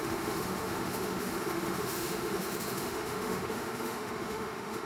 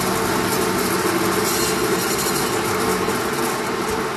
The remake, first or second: first